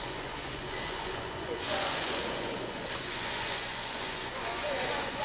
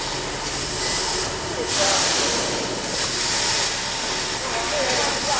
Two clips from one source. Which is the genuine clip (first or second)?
second